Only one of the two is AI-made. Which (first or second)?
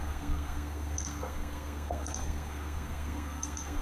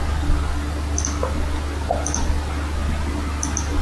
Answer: first